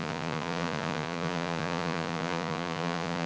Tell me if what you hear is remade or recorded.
remade